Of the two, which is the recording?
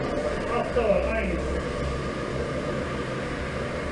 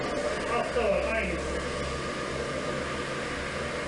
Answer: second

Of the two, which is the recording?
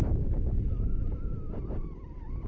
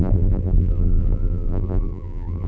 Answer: first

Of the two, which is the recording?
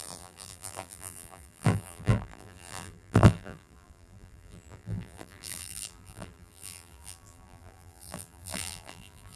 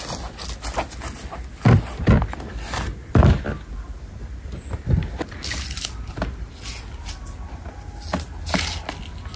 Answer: second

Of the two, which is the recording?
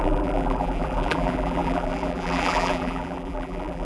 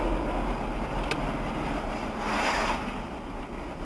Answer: second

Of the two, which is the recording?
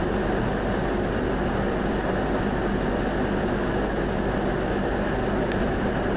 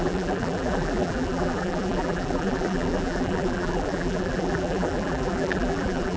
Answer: first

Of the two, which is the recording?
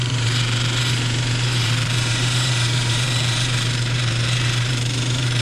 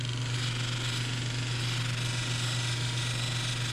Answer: second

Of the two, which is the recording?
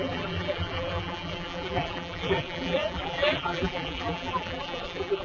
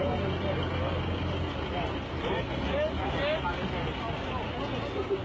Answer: second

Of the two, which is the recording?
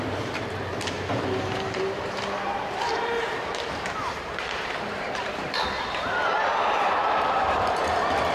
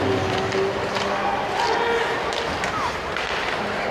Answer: second